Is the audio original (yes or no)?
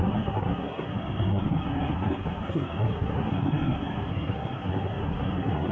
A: no